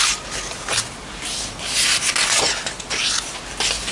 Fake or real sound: real